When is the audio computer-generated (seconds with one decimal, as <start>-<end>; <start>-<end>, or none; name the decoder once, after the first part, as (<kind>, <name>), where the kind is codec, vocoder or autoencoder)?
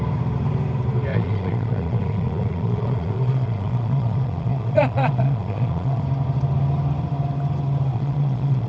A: 1.1-6.0 (vocoder, Vocos); 7.9-8.7